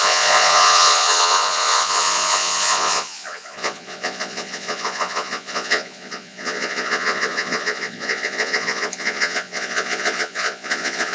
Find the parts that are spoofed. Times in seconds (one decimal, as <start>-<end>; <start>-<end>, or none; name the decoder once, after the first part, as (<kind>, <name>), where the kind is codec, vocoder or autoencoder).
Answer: 0.0-11.1 (vocoder, Vocos)